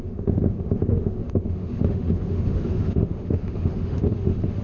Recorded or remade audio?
remade